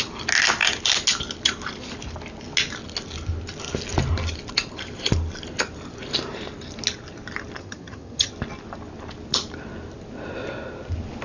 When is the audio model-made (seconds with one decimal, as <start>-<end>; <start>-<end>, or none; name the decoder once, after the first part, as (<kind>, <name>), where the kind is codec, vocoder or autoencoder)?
7.6-8.3 (vocoder, HiFi-GAN)